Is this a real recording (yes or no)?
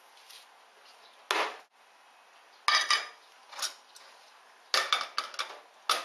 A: yes